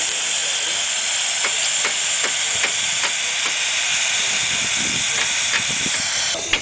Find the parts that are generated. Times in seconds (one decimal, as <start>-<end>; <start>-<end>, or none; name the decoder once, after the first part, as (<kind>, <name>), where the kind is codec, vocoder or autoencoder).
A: none